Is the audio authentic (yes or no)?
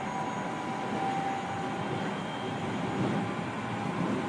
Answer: yes